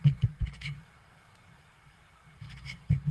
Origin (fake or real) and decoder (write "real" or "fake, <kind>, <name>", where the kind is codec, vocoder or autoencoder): fake, codec, SNAC